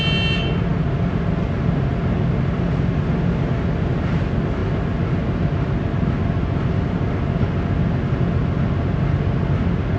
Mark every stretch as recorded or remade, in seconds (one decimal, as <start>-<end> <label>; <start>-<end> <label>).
0.0-10.0 recorded